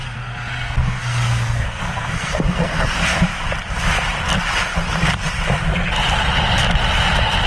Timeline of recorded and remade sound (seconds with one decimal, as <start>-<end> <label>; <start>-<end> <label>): 0.0-3.0 remade; 3.0-7.5 recorded